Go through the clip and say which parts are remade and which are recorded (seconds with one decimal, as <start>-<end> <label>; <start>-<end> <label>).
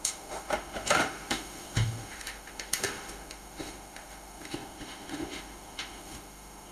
0.0-6.7 remade